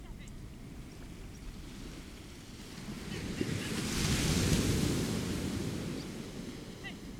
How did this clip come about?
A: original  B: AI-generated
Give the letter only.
A